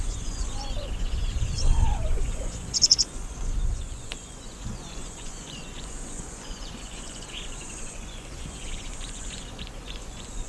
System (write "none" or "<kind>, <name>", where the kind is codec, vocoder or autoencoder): vocoder, Vocos